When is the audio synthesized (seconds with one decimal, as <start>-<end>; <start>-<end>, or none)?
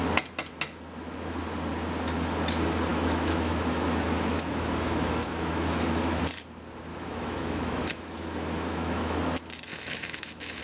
2.9-6.2; 6.9-9.2; 9.7-10.6